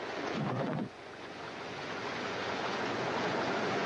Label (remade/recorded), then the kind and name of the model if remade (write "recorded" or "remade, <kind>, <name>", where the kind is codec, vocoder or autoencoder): remade, vocoder, Vocos